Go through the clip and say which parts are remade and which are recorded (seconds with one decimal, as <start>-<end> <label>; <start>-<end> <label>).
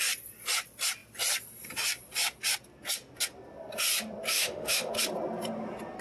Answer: 0.0-4.3 recorded; 4.3-4.9 remade; 4.9-6.0 recorded